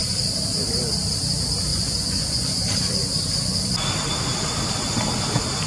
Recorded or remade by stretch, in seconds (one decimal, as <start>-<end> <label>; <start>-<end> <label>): 0.0-1.7 recorded; 1.7-2.7 remade; 2.7-5.7 recorded